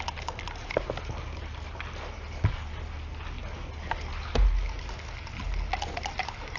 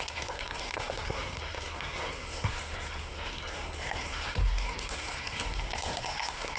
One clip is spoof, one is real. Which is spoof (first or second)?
second